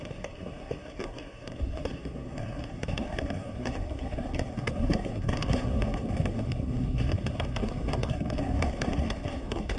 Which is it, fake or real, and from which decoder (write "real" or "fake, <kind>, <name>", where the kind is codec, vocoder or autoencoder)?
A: fake, codec, SNAC